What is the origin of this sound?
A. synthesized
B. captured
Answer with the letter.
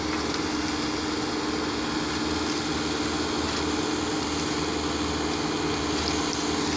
B